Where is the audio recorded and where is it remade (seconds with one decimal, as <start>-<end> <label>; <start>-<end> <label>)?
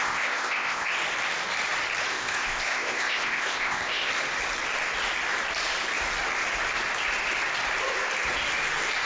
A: 0.0-0.9 remade; 0.9-2.1 recorded; 2.1-4.1 remade; 4.1-9.1 recorded